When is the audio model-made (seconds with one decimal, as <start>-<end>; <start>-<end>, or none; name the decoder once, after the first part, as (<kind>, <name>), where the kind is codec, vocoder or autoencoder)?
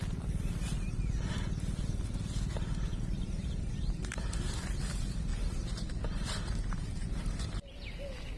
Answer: 5.3-7.6 (vocoder, BigVGAN v2)